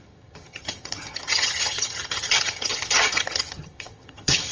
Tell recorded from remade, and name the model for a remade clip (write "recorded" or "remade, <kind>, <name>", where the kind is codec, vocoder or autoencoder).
remade, vocoder, HiFi-GAN